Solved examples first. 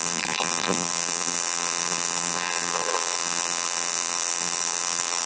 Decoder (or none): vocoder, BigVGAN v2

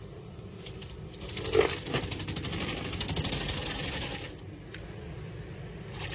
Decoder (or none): none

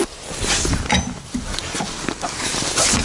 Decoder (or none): none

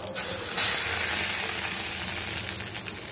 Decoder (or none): none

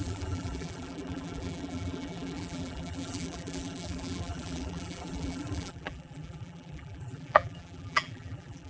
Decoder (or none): vocoder, BigVGAN v2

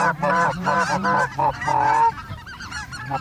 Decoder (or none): vocoder, BigVGAN v2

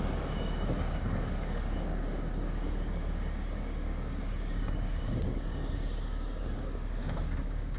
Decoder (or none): codec, DAC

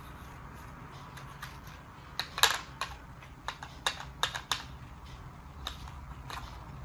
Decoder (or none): none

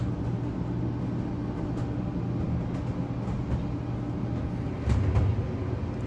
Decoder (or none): none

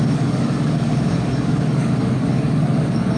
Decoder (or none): codec, DAC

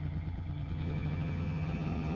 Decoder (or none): vocoder, HiFi-GAN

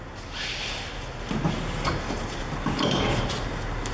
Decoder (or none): none